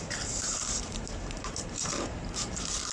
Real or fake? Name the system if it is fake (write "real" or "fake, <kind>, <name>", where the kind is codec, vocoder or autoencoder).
fake, vocoder, BigVGAN v2